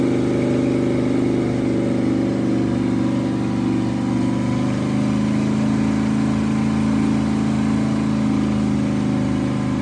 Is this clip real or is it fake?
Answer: real